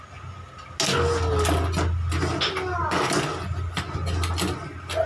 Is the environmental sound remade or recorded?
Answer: recorded